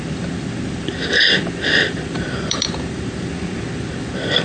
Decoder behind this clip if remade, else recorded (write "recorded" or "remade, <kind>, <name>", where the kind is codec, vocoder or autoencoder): remade, vocoder, BigVGAN v2